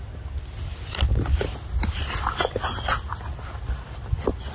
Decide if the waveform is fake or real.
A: real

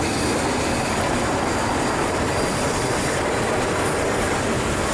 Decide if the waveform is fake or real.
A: real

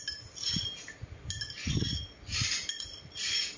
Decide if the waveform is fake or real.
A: real